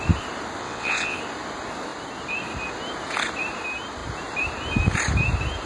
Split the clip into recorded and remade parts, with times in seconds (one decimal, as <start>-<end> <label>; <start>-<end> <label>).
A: 0.0-0.6 recorded; 0.6-1.2 remade; 1.2-5.7 recorded